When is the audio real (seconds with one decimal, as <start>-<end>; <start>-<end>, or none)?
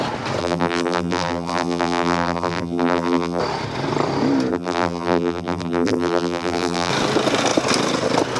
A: 0.0-0.4; 3.4-4.5; 6.9-8.4